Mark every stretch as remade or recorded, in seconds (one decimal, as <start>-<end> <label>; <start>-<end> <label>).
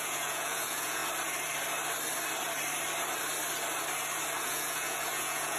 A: 0.0-1.0 remade; 1.0-4.4 recorded; 4.4-5.6 remade